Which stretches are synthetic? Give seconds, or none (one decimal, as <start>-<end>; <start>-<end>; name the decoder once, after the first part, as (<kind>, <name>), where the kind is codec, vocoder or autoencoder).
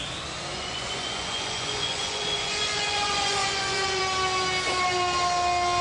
0.5-4.0 (vocoder, Vocos)